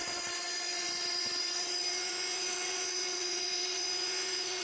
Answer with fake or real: fake